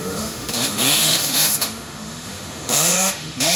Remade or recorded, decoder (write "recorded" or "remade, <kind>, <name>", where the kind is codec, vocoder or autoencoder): remade, autoencoder, DAC-VAE